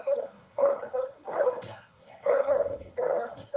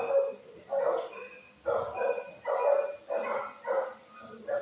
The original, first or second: second